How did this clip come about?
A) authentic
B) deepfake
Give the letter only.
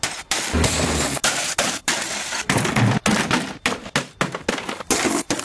A